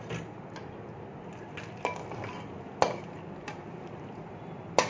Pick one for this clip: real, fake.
real